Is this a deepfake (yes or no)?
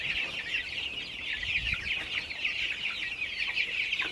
no